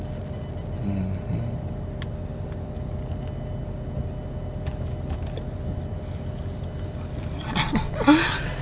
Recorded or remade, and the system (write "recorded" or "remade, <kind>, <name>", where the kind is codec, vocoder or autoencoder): recorded